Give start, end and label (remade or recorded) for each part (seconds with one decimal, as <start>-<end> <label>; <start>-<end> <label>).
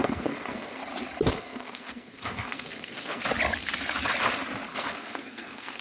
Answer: 0.0-0.8 remade; 0.8-1.3 recorded; 1.3-3.2 remade; 3.2-4.7 recorded; 4.7-5.8 remade